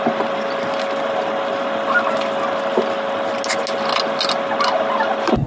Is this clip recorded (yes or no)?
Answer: yes